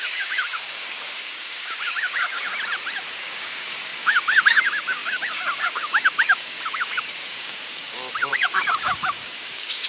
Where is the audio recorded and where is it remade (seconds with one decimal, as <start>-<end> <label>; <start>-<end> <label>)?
0.0-2.5 remade; 2.5-3.2 recorded; 3.2-9.9 remade